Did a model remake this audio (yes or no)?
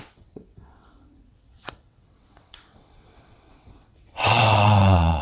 yes